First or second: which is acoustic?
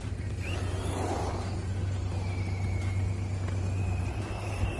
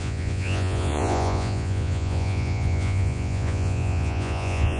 first